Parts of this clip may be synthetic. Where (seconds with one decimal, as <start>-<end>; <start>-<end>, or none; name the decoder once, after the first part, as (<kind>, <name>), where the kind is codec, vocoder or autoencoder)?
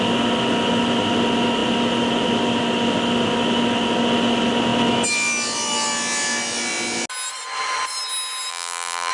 8.5-9.1 (vocoder, BigVGAN v2)